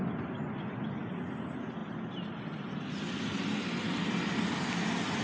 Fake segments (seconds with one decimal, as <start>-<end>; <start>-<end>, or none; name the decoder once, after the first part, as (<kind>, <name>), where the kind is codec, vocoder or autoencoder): none